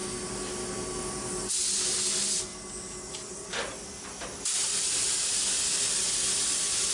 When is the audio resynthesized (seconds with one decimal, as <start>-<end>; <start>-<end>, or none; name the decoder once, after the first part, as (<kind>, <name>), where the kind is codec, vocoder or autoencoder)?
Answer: none